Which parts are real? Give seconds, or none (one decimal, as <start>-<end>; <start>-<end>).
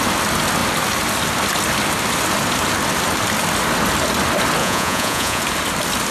0.0-4.6; 5.4-6.1